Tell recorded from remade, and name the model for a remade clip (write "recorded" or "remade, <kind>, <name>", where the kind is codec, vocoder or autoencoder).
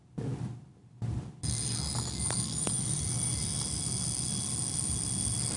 recorded